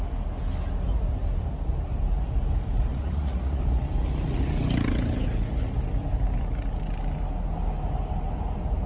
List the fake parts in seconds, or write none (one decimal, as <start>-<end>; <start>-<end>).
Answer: 2.9-3.6